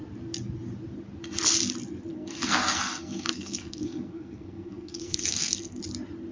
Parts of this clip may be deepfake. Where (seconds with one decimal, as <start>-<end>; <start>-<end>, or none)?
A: 2.1-5.8